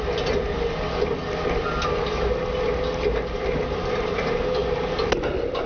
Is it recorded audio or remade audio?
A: recorded